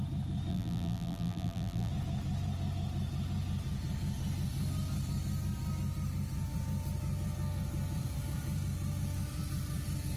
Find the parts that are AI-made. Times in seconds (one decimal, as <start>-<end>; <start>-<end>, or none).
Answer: 0.5-1.9